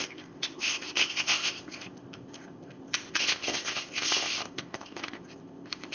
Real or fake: fake